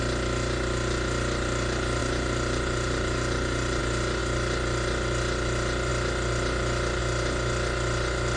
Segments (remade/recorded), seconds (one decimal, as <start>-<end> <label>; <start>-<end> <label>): 0.0-2.0 recorded; 2.0-3.8 remade; 3.8-8.4 recorded